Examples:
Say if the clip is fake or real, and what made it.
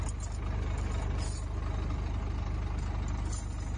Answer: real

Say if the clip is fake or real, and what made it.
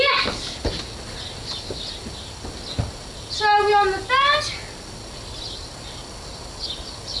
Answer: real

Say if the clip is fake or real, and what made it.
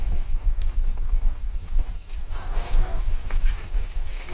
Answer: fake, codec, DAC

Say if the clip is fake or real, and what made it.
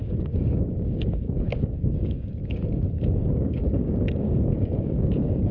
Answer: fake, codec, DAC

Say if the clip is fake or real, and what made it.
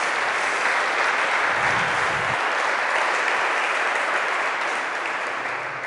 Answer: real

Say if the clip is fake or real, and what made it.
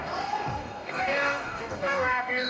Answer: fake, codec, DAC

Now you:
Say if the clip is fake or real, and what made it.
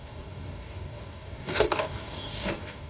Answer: fake, codec, DAC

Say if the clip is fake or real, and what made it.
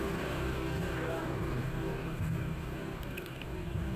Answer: fake, codec, DAC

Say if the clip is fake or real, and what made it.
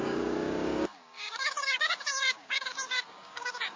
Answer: fake, codec, DAC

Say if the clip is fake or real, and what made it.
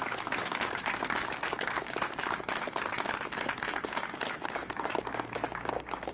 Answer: fake, codec, DAC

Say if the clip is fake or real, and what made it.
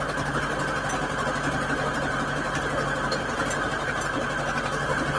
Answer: real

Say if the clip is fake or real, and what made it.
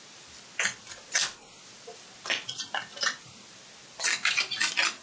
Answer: real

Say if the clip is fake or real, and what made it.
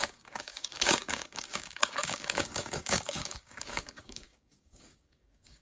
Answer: fake, codec, DAC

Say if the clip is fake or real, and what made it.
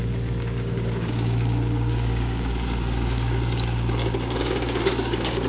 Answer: fake, codec, DAC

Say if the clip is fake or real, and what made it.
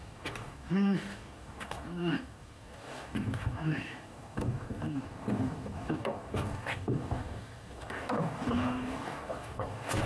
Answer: fake, codec, DAC